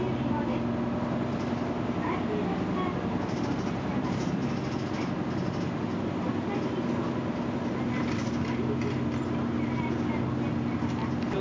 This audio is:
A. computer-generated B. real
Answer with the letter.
B